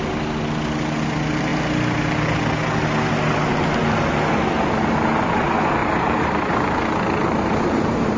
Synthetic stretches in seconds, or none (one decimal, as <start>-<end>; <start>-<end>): 5.8-6.5; 7.2-8.2

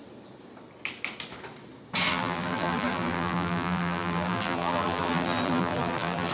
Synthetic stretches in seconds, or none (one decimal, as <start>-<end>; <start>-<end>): 2.1-6.3